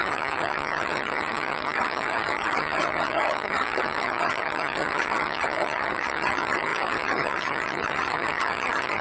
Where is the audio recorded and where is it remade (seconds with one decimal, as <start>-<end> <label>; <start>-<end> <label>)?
0.0-9.0 remade